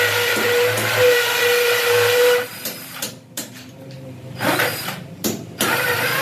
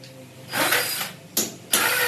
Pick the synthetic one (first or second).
first